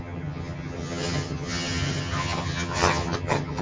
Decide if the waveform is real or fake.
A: fake